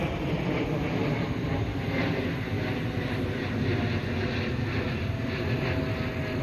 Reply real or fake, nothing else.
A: real